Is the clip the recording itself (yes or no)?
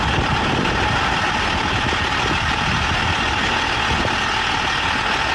yes